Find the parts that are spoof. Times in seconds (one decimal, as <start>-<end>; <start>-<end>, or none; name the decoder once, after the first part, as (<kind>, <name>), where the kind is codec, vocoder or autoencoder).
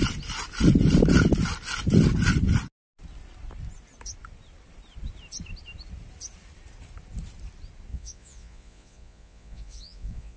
7.9-10.4 (vocoder, Vocos)